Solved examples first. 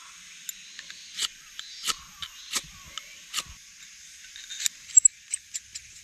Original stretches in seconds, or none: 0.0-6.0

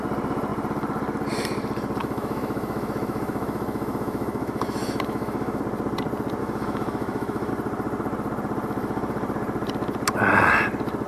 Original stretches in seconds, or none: 0.0-2.0; 5.6-6.4; 7.5-11.1

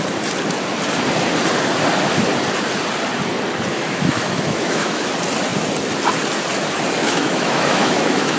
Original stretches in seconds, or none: 0.0-3.7; 5.0-7.0

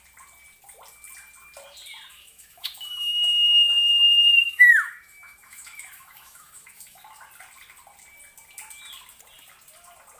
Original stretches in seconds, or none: 0.0-2.1; 7.0-10.2

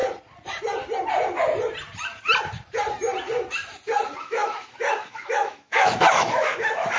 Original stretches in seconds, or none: 0.0-4.2

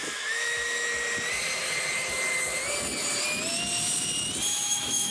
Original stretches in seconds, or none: 0.9-4.5

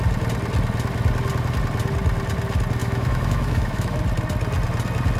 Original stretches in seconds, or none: 0.0-2.8; 4.0-5.2

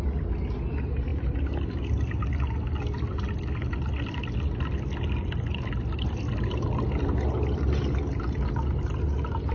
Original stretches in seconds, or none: 0.0-9.5